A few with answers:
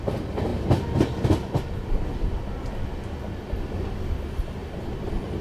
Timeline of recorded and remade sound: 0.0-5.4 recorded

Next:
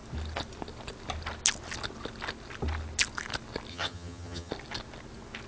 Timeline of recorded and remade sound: 0.0-3.7 recorded; 3.7-4.5 remade; 4.5-5.5 recorded